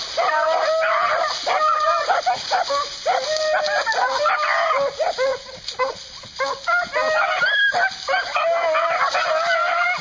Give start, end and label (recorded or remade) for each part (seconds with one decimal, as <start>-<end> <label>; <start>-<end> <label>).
0.0-1.0 recorded; 1.0-2.5 remade; 2.5-5.3 recorded; 5.3-5.8 remade; 5.8-10.0 recorded